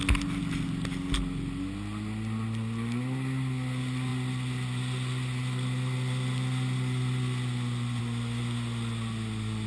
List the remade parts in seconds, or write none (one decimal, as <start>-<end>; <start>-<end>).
none